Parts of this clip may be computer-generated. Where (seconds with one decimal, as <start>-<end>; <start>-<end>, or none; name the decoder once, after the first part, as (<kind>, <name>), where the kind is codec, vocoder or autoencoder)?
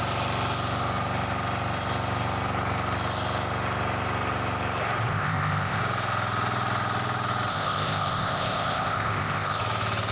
5.1-5.8 (codec, ZipCodec); 7.5-9.6